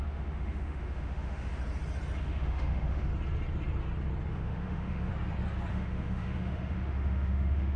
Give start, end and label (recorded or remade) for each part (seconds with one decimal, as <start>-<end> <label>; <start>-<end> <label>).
0.0-1.6 remade; 1.6-2.2 recorded; 2.2-3.1 remade; 3.1-4.3 recorded; 4.3-5.1 remade; 5.1-5.7 recorded; 5.7-7.8 remade